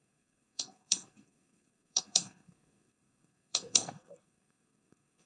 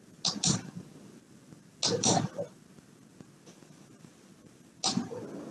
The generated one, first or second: first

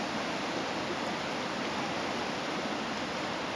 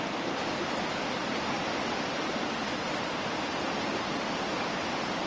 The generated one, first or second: second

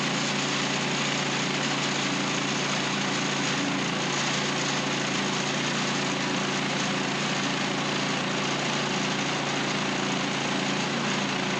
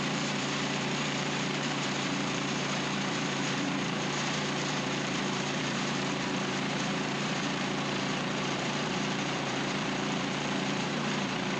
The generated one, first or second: second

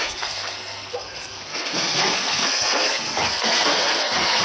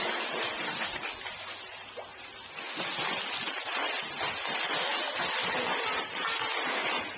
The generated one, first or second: first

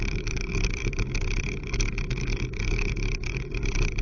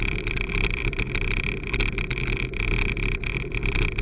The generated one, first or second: first